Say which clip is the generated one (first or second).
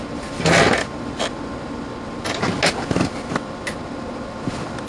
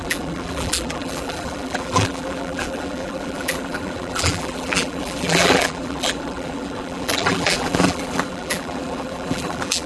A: second